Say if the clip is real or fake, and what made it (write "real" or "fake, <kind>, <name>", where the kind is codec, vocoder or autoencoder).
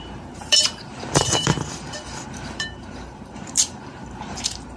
fake, vocoder, BigVGAN v2